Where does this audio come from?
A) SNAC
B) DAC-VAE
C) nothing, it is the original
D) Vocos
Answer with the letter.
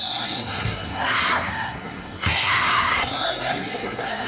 A